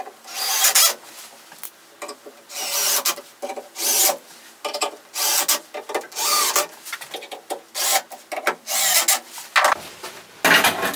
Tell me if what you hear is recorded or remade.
recorded